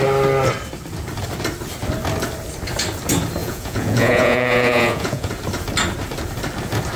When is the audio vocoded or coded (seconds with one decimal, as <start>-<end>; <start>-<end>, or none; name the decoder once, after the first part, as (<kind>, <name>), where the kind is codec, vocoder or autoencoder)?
3.4-5.3 (vocoder, Vocos)